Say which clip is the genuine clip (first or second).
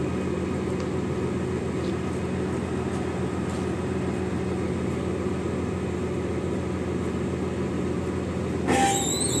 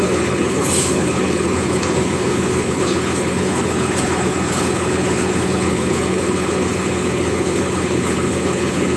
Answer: first